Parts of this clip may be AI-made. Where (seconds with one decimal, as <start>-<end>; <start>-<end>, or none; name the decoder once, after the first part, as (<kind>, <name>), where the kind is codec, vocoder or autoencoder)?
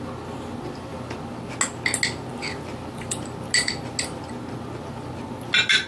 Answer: none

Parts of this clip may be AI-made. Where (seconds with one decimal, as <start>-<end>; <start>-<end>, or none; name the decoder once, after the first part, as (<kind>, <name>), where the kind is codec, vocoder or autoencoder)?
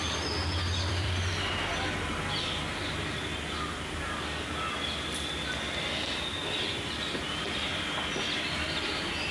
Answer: 0.0-1.7 (vocoder, BigVGAN v2); 5.8-6.4; 7.2-7.7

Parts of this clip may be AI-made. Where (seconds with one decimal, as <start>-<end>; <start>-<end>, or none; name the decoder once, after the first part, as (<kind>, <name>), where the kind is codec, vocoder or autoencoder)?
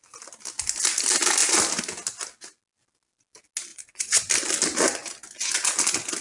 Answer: 3.7-4.2 (vocoder, Vocos)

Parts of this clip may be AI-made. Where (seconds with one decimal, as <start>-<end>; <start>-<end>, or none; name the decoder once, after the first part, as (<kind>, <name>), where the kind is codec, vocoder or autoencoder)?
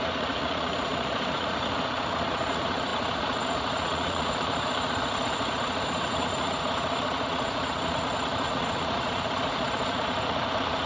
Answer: 0.0-10.9 (vocoder, Vocos)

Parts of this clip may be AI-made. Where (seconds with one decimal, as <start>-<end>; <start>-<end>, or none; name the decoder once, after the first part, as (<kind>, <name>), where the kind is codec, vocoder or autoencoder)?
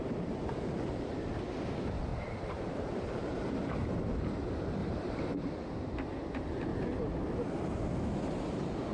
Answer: 2.1-3.5 (vocoder, BigVGAN v2); 4.8-5.5